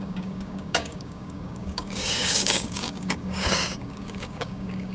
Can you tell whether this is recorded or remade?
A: remade